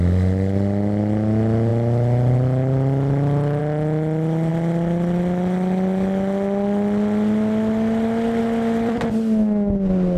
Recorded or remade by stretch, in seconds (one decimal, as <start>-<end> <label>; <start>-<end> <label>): 0.0-10.2 recorded